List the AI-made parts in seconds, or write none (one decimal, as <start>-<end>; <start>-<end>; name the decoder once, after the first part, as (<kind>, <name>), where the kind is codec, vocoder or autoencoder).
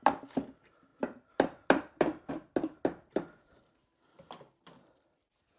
none